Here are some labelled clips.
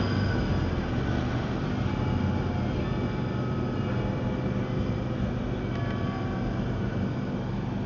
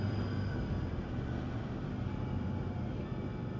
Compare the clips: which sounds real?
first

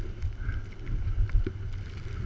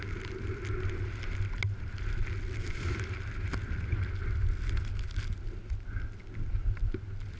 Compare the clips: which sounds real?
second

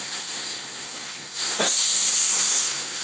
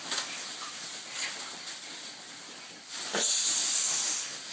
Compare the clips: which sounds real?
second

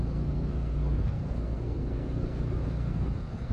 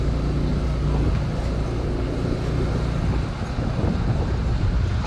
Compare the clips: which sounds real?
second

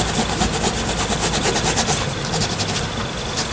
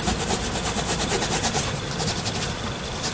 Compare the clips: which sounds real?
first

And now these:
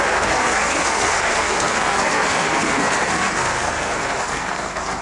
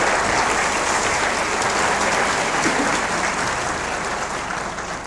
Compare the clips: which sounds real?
second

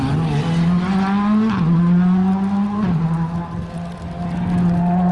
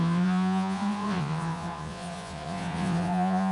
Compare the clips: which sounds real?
first